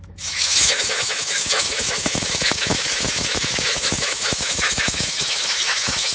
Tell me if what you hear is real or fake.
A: fake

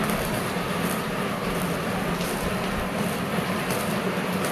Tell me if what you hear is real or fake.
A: real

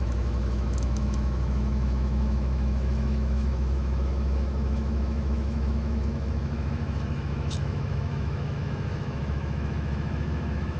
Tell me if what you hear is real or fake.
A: fake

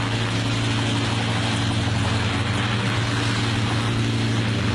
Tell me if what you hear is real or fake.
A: real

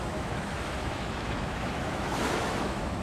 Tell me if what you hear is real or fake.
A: fake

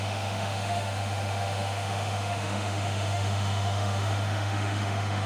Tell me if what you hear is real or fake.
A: fake